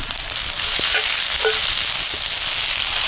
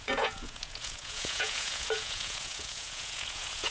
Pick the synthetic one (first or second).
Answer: second